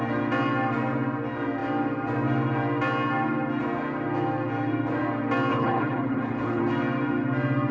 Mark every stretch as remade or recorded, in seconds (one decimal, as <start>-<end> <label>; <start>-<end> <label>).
0.0-5.5 recorded; 5.5-6.6 remade; 6.6-7.7 recorded